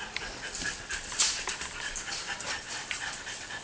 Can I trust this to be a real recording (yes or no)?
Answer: yes